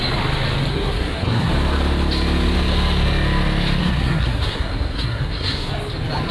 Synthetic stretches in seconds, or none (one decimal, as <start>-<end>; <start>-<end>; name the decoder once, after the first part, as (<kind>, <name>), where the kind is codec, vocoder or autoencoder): 0.7-1.5 (codec, SNAC); 3.8-5.7